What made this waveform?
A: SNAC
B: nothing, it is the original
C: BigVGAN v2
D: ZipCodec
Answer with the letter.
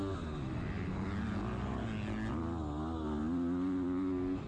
B